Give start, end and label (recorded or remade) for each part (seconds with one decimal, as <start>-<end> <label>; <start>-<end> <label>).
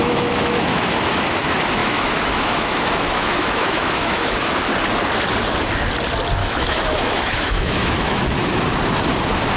0.0-0.8 remade; 0.8-1.8 recorded; 1.8-4.5 remade; 4.5-6.4 recorded; 6.4-8.6 remade; 8.6-9.6 recorded